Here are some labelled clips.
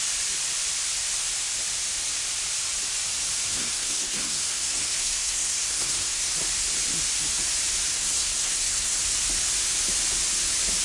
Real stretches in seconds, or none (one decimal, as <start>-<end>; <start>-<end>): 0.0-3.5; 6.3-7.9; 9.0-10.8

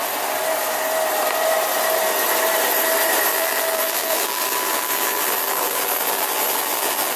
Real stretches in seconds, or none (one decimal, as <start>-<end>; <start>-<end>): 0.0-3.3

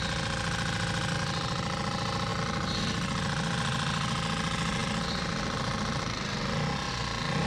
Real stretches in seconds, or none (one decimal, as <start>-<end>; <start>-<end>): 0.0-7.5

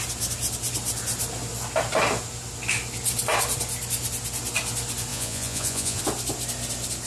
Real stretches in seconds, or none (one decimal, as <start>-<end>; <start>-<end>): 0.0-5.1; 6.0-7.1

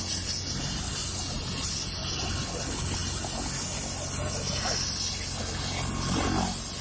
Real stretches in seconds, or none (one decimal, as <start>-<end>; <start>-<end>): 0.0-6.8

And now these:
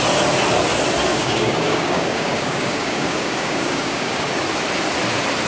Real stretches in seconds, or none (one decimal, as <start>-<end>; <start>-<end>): 0.0-1.1; 4.4-5.5

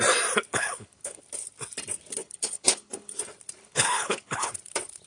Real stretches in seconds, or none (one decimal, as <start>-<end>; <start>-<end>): 0.0-0.5; 1.2-2.2; 3.2-3.6; 4.5-5.1